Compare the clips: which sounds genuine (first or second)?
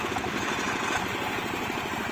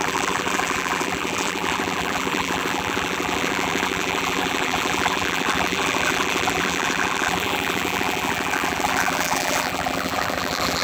first